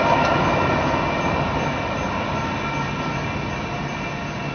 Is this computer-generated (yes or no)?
no